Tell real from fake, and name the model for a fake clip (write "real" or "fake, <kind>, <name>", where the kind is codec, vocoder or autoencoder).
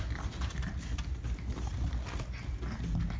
real